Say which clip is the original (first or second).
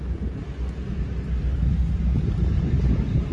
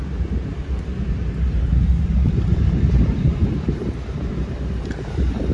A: first